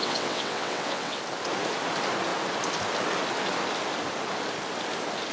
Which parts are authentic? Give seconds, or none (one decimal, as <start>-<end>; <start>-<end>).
1.2-5.3